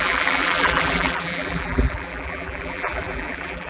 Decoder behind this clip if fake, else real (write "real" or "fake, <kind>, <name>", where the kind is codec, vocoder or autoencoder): fake, vocoder, BigVGAN v2